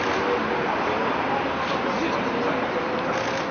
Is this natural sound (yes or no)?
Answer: yes